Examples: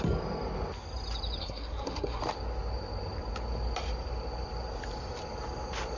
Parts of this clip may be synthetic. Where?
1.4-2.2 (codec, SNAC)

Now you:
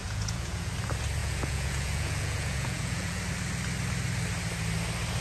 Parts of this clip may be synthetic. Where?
0.0-0.7 (vocoder, Vocos); 1.2-3.2

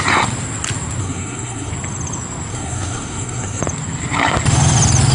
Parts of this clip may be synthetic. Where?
1.0-1.7 (codec, SNAC); 2.5-3.6

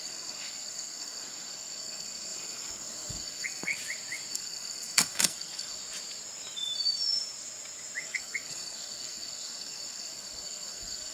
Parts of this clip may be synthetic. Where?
0.0-3.7 (codec, SNAC); 4.3-5.8; 8.0-11.1

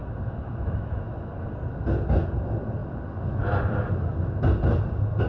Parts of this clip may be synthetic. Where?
0.0-1.3 (autoencoder, DAC-VAE)

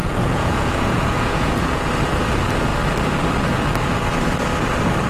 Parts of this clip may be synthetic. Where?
0.0-1.9 (vocoder, Vocos)